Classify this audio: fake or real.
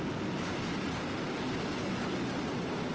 real